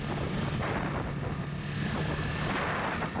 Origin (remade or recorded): recorded